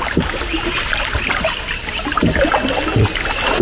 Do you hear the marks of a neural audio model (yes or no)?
no